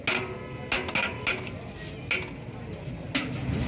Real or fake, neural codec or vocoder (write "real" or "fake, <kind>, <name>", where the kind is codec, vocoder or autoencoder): real